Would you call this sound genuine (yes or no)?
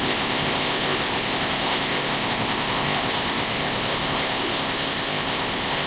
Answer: no